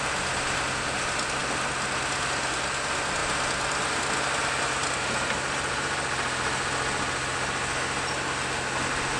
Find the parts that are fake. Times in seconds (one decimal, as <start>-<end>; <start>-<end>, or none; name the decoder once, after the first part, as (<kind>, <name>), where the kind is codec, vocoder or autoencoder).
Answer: none